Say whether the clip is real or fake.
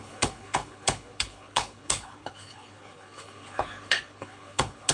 fake